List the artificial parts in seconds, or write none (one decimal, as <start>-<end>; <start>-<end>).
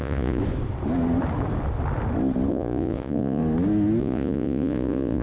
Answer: 0.0-0.4; 2.5-3.4; 4.0-5.2